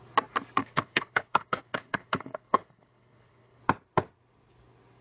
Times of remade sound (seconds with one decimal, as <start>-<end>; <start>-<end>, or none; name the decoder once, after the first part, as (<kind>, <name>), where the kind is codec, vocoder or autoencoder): 0.6-3.6 (codec, HILCodec)